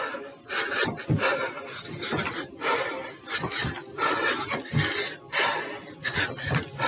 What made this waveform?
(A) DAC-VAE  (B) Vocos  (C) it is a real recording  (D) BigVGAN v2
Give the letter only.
D